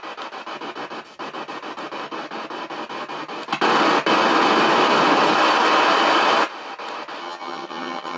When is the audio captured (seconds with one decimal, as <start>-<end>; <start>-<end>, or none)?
0.0-7.2